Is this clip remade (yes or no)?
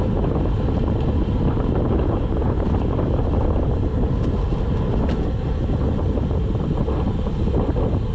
no